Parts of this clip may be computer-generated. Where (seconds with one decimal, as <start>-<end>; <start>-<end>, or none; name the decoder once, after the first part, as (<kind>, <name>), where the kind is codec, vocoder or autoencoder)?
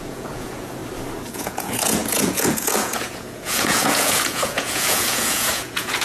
0.0-0.8 (vocoder, Vocos); 1.3-6.0